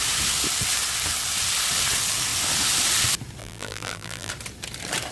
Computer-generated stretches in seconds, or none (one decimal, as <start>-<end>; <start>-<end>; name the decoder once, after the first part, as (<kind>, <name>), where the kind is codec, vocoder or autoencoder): 3.4-4.3 (vocoder, BigVGAN v2)